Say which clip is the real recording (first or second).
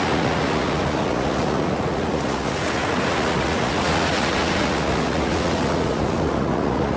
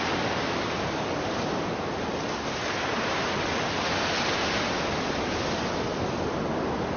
second